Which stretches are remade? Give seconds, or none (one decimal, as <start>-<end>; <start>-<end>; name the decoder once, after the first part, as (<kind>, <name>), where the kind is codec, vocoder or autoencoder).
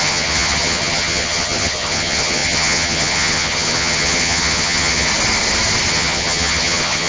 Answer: 0.0-5.1 (vocoder, HiFi-GAN); 5.9-7.1